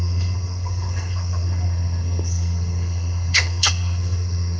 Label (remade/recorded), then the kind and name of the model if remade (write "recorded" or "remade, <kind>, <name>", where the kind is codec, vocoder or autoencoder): remade, codec, SNAC